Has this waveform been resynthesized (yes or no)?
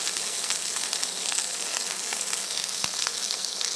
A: yes